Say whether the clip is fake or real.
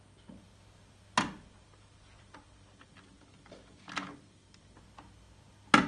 real